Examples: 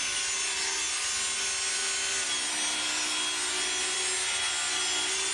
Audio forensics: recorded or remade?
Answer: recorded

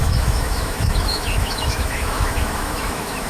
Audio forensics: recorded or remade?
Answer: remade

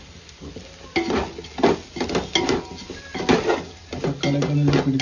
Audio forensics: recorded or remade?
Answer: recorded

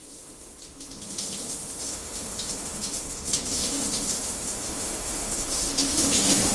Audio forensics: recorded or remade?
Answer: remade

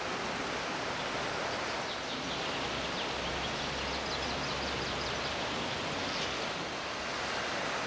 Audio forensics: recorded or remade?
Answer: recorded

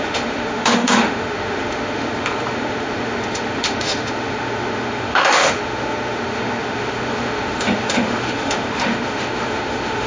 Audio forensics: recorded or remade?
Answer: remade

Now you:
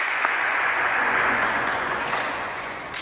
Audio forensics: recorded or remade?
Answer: remade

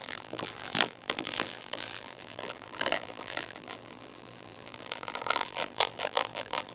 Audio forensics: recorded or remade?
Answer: remade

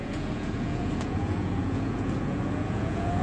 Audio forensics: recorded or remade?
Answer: remade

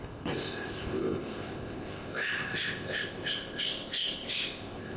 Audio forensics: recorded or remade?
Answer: remade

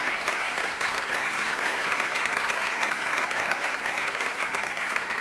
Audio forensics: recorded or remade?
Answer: remade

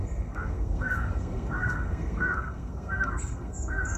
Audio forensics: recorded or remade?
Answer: remade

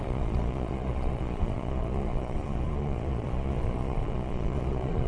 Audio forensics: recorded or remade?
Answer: remade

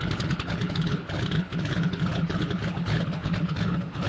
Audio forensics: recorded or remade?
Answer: remade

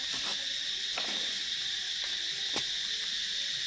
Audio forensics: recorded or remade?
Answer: recorded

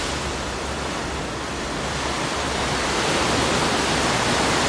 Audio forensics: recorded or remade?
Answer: recorded